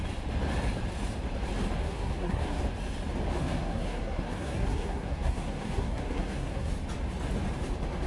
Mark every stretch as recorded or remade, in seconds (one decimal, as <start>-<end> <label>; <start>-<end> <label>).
0.0-1.8 recorded; 1.8-2.6 remade; 2.6-3.4 recorded; 3.4-6.7 remade; 6.7-8.1 recorded